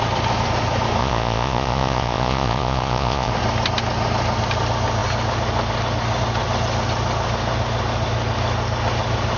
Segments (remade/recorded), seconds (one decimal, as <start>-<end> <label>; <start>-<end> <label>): 0.0-1.0 recorded; 1.0-3.3 remade; 3.3-9.4 recorded